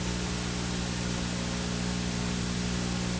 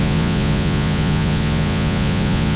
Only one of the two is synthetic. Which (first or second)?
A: second